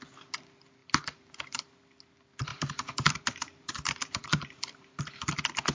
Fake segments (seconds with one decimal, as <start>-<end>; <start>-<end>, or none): 0.8-1.7; 2.5-5.0